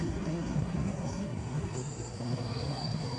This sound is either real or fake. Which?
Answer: fake